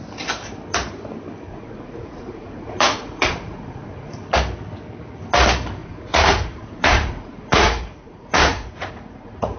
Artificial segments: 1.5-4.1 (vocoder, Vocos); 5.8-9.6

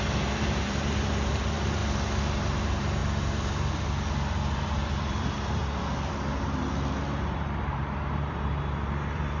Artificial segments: 0.0-1.8 (vocoder, BigVGAN v2); 2.4-3.0; 4.5-5.6; 7.3-9.4

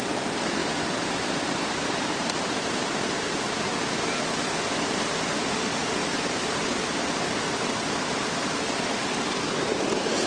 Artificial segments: 0.6-3.7 (vocoder, BigVGAN v2)

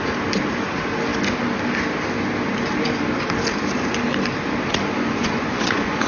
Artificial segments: 5.0-6.1 (vocoder, Vocos)

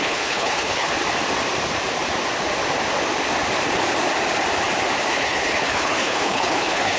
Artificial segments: 0.0-0.9 (codec, HILCodec); 5.1-7.0